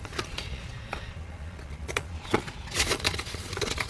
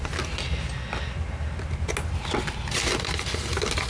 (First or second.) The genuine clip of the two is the second